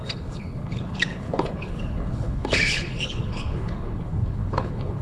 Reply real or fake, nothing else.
fake